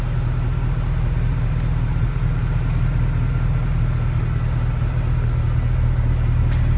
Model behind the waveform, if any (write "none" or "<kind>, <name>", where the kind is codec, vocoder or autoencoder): none